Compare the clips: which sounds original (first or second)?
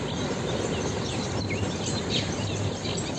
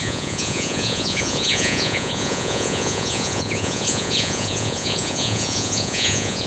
first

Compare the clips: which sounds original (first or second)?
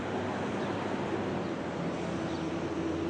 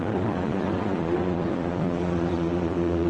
first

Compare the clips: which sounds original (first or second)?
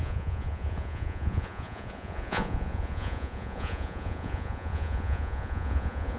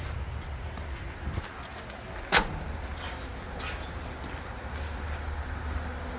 second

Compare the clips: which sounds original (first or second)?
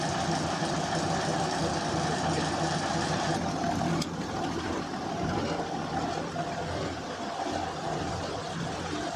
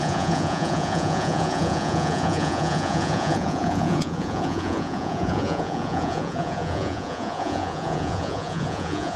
first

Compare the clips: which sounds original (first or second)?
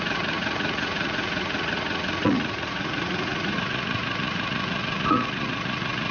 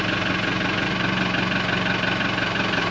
second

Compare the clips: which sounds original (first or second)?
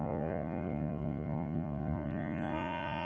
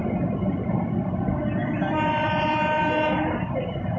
second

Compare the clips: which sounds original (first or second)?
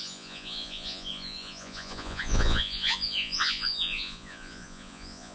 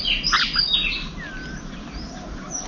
second